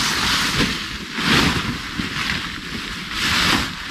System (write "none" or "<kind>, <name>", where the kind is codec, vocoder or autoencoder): none